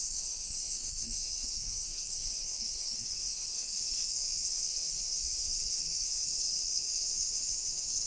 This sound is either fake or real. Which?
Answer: fake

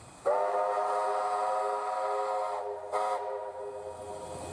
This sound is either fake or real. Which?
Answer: real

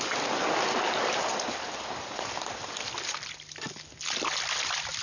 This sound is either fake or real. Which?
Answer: real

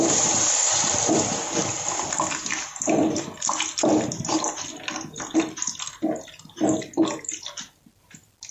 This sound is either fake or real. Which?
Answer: real